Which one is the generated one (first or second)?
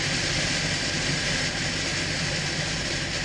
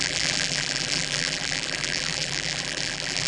second